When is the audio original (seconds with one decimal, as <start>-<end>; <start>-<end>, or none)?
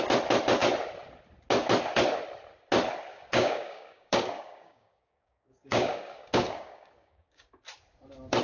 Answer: 0.0-3.1; 7.5-8.4